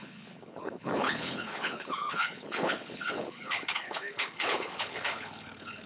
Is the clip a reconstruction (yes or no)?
yes